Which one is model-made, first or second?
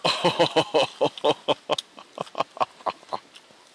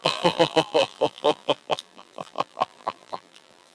second